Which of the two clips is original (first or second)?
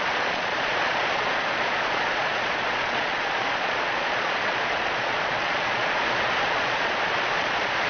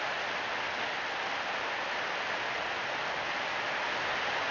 second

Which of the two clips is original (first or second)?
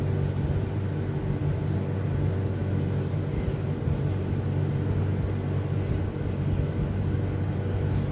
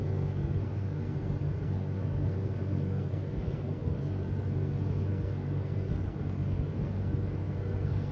first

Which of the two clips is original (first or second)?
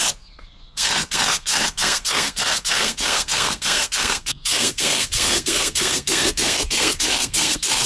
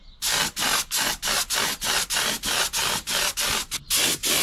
second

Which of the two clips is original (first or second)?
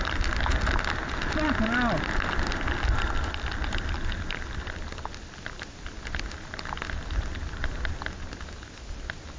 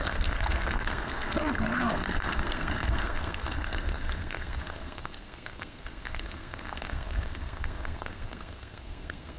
first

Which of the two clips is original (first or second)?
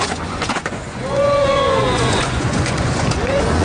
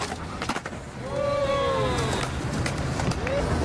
second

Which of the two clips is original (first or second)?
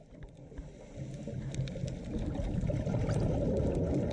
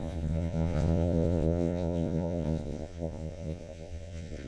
first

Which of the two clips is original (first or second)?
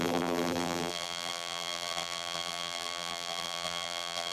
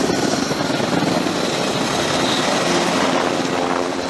second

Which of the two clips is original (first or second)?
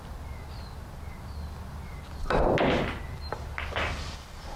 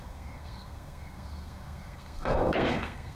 first